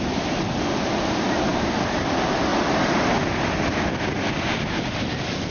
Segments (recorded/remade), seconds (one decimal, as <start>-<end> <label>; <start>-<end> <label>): 0.0-5.5 recorded